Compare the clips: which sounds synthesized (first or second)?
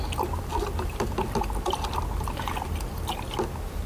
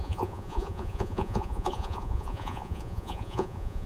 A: second